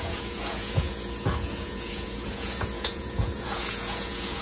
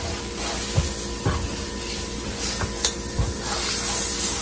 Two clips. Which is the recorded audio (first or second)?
second